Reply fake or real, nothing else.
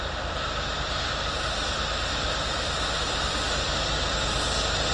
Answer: real